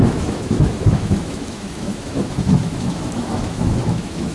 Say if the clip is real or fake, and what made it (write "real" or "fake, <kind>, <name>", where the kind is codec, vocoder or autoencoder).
fake, autoencoder, DAC-VAE